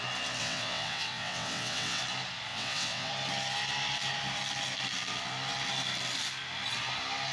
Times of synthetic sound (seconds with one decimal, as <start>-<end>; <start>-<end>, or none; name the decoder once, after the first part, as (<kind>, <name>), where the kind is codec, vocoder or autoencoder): 0.4-2.0 (vocoder, WaveNeXt); 2.5-3.1